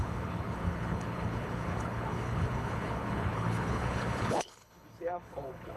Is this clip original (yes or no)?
no